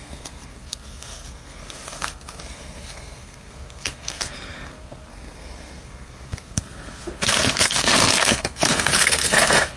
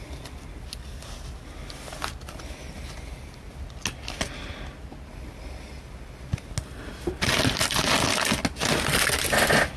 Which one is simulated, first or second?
first